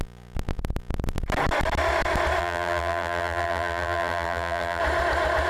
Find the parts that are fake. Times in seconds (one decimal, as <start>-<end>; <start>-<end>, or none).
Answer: 2.4-4.8